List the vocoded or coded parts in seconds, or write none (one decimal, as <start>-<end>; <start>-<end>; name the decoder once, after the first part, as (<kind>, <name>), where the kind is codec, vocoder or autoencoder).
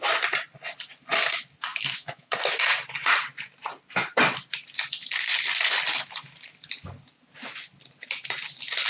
1.7-2.4 (autoencoder, DAC-VAE)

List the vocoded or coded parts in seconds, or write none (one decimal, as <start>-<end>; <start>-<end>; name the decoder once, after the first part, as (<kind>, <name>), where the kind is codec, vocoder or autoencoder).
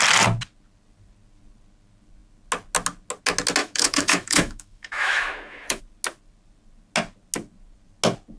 3.6-5.8 (autoencoder, DAC-VAE)